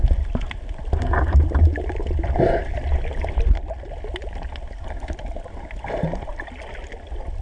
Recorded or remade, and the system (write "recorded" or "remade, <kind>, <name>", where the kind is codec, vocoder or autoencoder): recorded